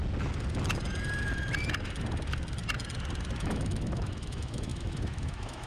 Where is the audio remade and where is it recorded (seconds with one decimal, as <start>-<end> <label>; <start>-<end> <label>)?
0.0-3.4 recorded; 3.4-5.7 remade